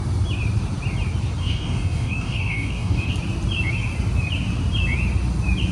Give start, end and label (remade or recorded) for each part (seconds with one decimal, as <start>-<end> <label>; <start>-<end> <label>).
0.0-1.4 recorded; 1.4-3.1 remade; 3.1-5.7 recorded